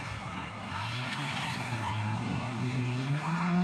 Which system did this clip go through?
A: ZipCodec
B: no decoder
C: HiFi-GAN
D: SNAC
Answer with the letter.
D